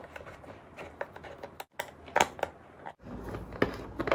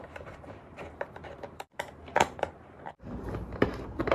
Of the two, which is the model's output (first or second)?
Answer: second